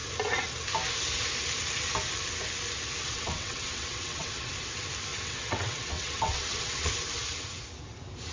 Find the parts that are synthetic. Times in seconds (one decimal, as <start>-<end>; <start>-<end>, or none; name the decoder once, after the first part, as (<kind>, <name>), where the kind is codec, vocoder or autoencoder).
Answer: 3.0-4.5 (vocoder, WaveNeXt); 5.1-6.9